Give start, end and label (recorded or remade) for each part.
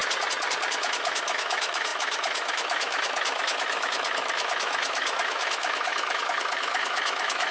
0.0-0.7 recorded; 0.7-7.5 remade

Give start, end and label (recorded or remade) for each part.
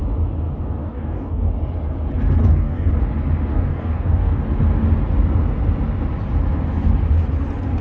0.0-0.8 recorded; 0.8-1.5 remade; 1.5-2.4 recorded; 2.4-2.9 remade; 2.9-3.5 recorded; 3.5-4.4 remade; 4.4-7.8 recorded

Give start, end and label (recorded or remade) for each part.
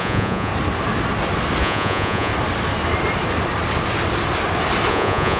0.0-0.5 remade; 0.5-1.6 recorded; 1.6-2.3 remade; 2.3-4.9 recorded; 4.9-5.4 remade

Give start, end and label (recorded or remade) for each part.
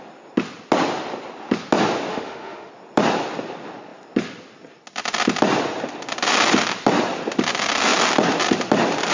0.0-2.1 recorded; 2.1-2.7 remade; 2.7-9.1 recorded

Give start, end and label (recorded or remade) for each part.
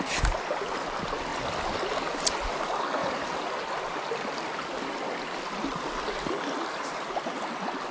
0.0-7.9 recorded